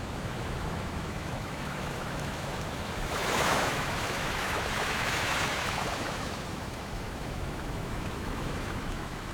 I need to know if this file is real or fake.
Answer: fake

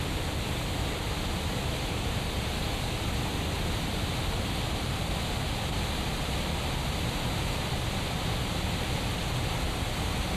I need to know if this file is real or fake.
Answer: real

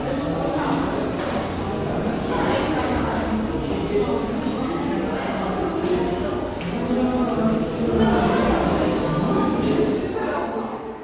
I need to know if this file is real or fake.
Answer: real